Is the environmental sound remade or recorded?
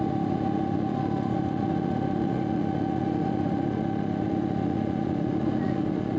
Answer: remade